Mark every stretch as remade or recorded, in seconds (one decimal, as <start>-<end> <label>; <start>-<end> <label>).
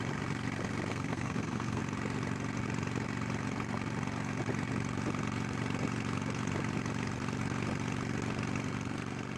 0.0-0.9 recorded; 0.9-1.8 remade; 1.8-9.4 recorded